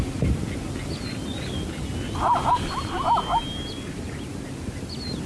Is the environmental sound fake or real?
real